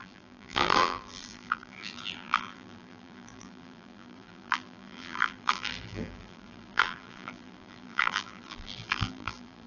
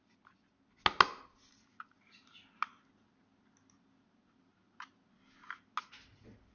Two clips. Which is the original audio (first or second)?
second